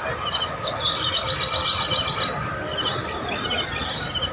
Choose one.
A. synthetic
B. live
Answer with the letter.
B